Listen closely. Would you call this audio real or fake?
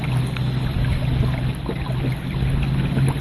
real